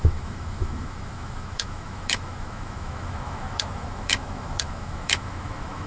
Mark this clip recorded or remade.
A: remade